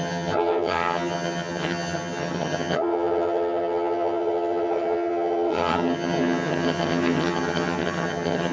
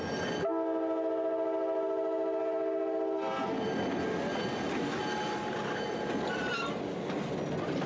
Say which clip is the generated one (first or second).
first